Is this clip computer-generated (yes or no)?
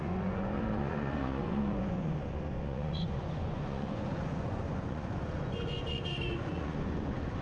yes